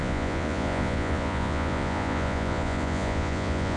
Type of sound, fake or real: fake